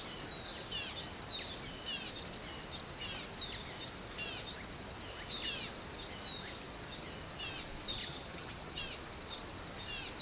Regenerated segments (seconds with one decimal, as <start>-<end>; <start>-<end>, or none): 8.0-8.8